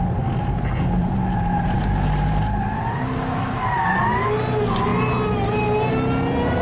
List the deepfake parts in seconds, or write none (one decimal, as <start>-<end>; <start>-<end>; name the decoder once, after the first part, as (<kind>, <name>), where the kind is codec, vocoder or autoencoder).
1.0-4.0 (vocoder, BigVGAN v2)